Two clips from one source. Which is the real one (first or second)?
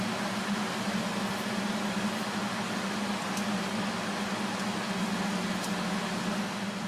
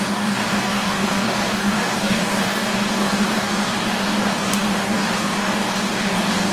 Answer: first